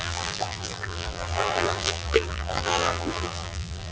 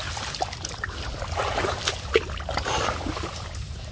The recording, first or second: second